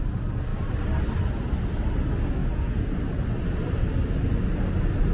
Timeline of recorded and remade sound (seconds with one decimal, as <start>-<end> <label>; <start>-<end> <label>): 0.0-2.4 recorded; 2.4-2.9 remade; 2.9-5.1 recorded